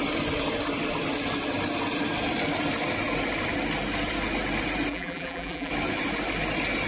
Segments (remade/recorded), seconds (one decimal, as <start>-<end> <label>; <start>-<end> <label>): 0.0-4.9 recorded; 4.9-5.7 remade; 5.7-6.9 recorded